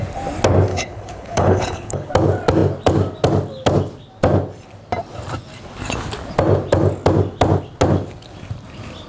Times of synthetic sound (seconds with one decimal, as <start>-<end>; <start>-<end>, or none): 0.7-2.1